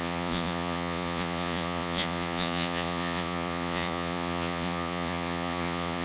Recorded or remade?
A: remade